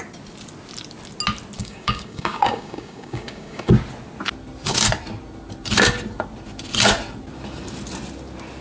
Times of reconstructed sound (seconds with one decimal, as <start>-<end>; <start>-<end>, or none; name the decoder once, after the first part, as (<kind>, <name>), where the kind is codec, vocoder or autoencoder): 1.6-3.7 (codec, DAC)